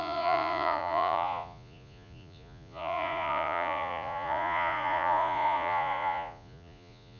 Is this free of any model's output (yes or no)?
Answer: no